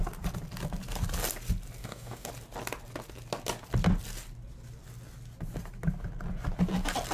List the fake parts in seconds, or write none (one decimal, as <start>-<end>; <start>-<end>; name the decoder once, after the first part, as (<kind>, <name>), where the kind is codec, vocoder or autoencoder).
1.8-2.3 (codec, DAC)